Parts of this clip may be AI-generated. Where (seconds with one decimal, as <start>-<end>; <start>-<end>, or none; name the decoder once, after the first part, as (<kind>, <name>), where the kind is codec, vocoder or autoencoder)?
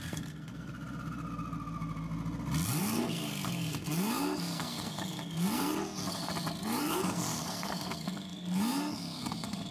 0.0-0.7 (codec, SNAC); 2.8-6.3; 6.8-9.7